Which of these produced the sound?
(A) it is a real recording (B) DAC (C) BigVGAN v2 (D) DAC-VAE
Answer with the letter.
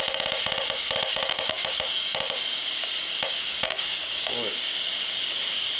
B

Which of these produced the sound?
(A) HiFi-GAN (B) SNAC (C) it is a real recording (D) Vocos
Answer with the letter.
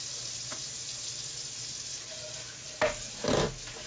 C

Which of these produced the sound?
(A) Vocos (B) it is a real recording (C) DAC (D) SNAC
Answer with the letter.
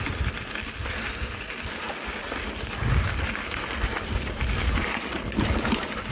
B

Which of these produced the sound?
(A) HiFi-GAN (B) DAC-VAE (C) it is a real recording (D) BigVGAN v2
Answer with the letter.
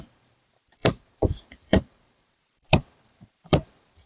D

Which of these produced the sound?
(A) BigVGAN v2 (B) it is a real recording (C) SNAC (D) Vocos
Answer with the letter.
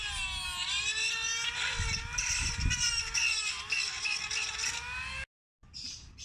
B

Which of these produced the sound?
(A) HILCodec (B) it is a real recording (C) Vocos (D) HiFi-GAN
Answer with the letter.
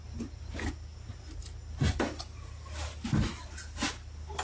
B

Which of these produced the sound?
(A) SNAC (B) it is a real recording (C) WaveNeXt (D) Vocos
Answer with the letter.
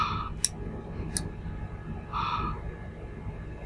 B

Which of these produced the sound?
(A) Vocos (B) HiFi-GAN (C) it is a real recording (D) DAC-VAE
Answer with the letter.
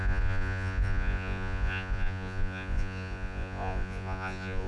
A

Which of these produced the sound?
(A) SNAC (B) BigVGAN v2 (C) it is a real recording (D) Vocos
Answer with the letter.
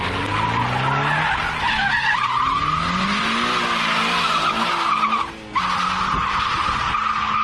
C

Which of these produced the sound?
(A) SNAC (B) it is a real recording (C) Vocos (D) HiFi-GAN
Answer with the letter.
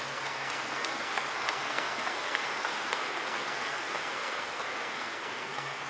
A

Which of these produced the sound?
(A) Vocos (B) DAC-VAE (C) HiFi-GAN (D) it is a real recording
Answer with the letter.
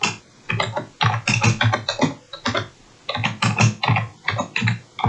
D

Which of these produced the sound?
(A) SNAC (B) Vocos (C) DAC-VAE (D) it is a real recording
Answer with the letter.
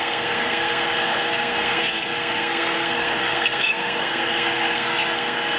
A